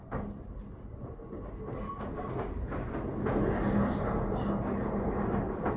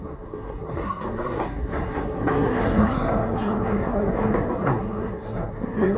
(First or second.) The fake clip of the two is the second